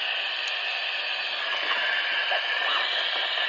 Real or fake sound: real